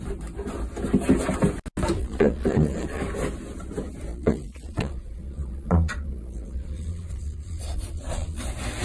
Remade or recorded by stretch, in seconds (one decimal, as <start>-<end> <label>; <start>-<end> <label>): 0.0-2.0 recorded; 2.0-3.0 remade; 3.0-4.1 recorded; 4.1-8.4 remade; 8.4-8.8 recorded